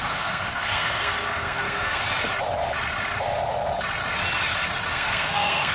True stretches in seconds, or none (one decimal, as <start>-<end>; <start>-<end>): 2.0-4.9